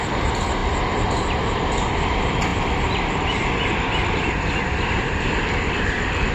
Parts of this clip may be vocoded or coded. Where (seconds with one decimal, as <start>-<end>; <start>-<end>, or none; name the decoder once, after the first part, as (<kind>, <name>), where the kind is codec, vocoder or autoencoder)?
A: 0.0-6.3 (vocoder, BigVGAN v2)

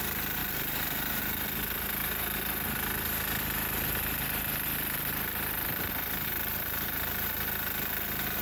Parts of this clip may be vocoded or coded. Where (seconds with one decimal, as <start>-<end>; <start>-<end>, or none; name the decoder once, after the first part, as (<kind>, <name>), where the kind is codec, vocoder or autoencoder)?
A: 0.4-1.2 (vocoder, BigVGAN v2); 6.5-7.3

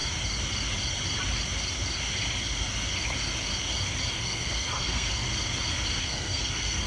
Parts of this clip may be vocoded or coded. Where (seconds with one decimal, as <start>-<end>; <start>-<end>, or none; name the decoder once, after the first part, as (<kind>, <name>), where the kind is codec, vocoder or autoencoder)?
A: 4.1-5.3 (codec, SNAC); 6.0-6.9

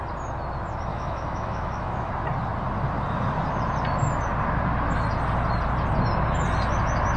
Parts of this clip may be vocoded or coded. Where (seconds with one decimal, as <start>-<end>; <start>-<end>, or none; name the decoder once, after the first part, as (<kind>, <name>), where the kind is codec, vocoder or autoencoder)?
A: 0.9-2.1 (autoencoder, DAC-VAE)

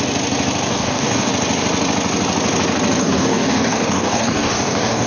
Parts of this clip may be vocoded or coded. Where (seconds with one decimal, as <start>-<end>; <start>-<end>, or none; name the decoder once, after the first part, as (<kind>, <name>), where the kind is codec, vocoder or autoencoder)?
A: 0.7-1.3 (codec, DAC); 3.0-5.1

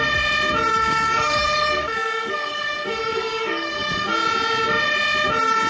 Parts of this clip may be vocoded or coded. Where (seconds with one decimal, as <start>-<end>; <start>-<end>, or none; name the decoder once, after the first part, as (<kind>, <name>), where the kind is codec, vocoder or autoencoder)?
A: 0.7-4.1 (codec, DAC)

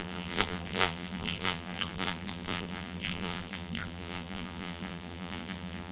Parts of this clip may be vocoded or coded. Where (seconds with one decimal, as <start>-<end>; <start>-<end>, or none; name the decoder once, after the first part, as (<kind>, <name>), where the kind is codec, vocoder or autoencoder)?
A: 0.0-5.9 (vocoder, BigVGAN v2)

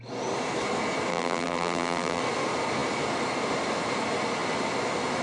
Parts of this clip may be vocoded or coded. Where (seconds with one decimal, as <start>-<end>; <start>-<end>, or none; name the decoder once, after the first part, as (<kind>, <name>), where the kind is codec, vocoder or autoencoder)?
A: 1.1-2.2 (vocoder, BigVGAN v2)